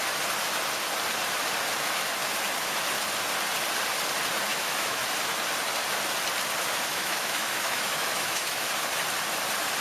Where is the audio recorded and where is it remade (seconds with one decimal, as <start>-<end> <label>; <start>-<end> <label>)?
0.0-4.5 recorded; 4.5-5.0 remade; 5.0-6.9 recorded; 6.9-8.7 remade; 8.7-9.8 recorded